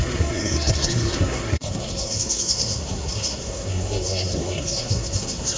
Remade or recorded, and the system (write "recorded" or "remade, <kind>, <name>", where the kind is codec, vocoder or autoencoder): remade, codec, SNAC